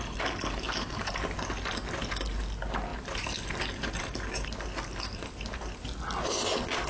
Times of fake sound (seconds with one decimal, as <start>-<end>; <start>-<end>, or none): none